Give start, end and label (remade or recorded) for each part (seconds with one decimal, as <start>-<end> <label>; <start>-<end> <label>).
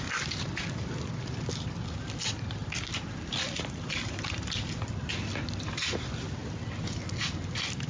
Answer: 0.0-2.6 recorded; 2.6-4.5 remade; 4.5-7.9 recorded